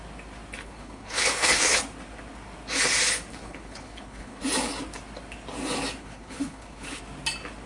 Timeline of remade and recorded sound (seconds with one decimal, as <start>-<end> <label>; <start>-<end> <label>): 0.0-0.6 recorded; 0.6-1.8 remade; 1.8-3.3 recorded; 3.3-4.4 remade; 4.4-6.0 recorded; 6.0-7.0 remade; 7.0-7.7 recorded